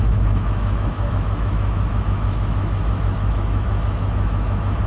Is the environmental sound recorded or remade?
remade